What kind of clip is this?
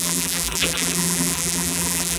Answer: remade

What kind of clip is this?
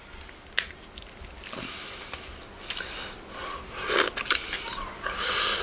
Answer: recorded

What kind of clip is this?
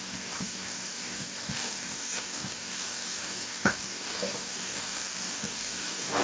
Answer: remade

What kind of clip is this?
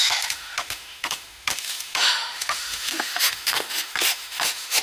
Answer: remade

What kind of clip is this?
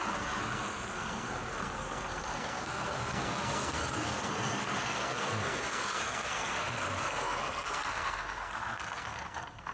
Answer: remade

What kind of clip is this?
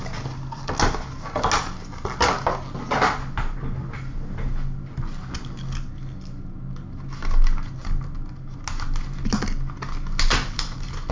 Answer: recorded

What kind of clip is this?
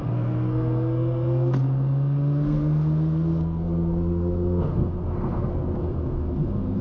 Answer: remade